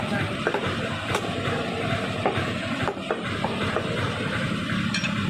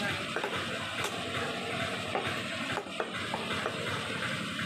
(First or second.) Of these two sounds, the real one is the second